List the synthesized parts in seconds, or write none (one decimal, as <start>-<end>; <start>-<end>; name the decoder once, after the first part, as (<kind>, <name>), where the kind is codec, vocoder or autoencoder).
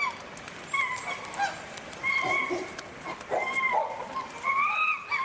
none